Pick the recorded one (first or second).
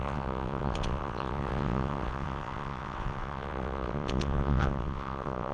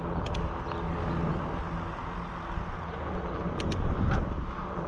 second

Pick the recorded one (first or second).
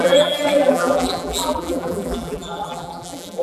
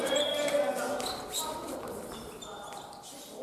second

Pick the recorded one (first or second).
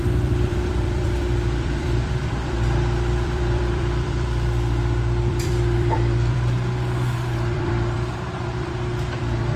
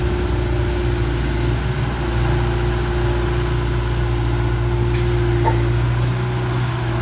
second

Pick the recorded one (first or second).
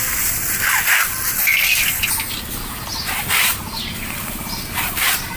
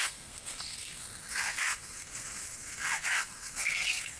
first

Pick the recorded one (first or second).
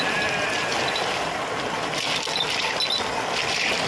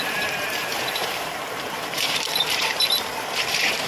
first